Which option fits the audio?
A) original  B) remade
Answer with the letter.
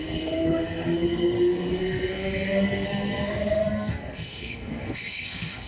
B